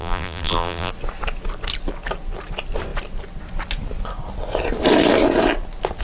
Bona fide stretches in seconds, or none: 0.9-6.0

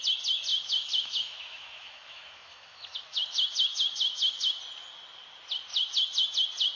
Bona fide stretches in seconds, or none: 0.0-0.5; 4.6-6.8

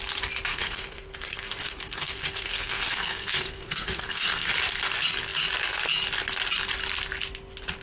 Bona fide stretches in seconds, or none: 0.0-0.5; 4.5-7.8

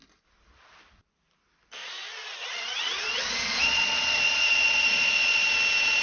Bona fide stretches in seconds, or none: 0.0-1.8; 5.4-6.0

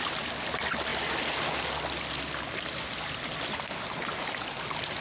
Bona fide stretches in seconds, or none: 0.0-5.0